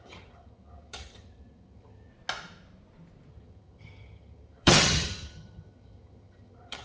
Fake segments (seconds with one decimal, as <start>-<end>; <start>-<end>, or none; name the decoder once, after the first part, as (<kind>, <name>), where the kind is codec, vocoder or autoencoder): 0.0-2.1 (vocoder, HiFi-GAN); 3.3-6.8